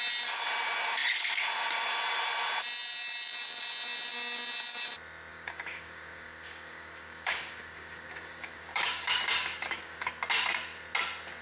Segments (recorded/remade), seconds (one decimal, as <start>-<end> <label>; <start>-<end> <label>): 0.0-5.3 recorded; 5.3-10.1 remade; 10.1-11.4 recorded